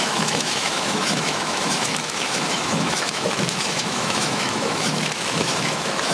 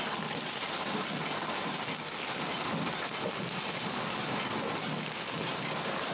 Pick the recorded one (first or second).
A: second